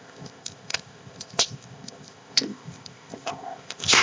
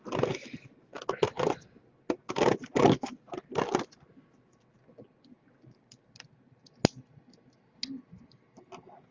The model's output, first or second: first